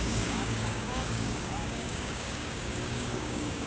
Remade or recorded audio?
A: remade